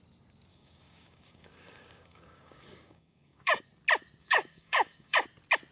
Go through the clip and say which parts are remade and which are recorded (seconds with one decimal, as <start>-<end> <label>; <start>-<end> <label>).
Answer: 0.0-0.5 recorded; 0.5-3.6 remade; 3.6-4.2 recorded; 4.2-5.2 remade; 5.2-5.7 recorded